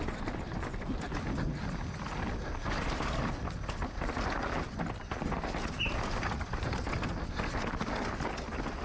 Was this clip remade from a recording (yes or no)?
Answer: no